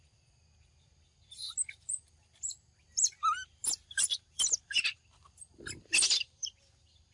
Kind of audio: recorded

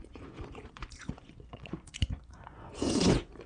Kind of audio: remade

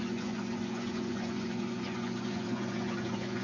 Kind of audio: remade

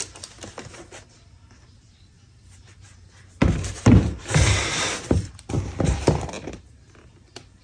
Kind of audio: recorded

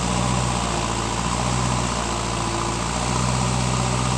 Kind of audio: recorded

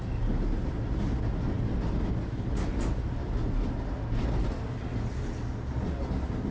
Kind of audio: recorded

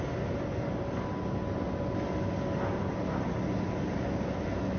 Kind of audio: recorded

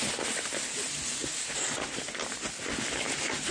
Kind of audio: recorded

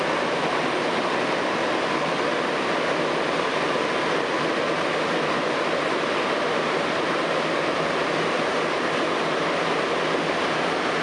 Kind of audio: recorded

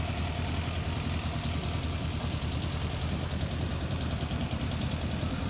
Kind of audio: recorded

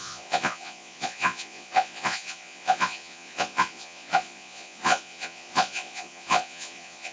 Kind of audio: remade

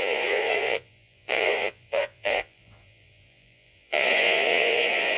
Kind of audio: remade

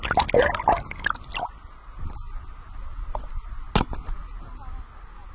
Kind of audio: recorded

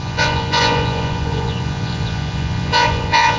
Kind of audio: remade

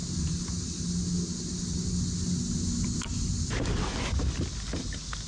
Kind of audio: recorded